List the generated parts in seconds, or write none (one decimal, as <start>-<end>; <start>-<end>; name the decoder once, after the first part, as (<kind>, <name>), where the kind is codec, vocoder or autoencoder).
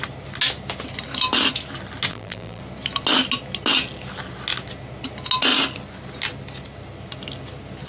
2.1-2.6 (vocoder, BigVGAN v2)